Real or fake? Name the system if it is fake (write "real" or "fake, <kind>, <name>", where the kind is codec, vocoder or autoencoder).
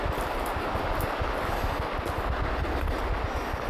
real